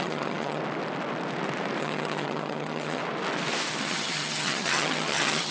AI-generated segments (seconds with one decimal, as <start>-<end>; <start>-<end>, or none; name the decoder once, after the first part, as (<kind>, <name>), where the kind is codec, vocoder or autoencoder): 0.0-0.6 (vocoder, HiFi-GAN); 1.8-3.0; 3.8-5.5